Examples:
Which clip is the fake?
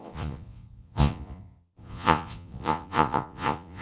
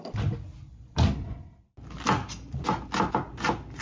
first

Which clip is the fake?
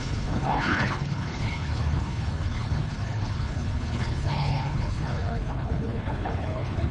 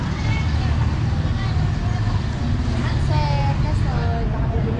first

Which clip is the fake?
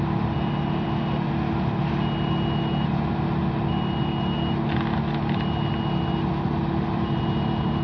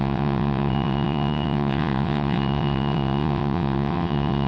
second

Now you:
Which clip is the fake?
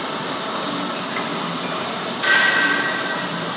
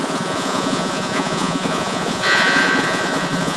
second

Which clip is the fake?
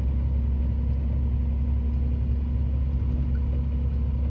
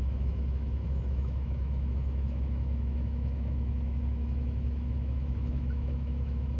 second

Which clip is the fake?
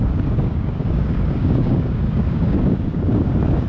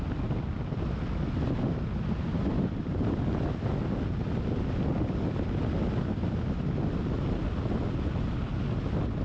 first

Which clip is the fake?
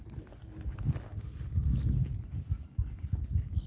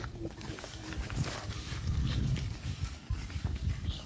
second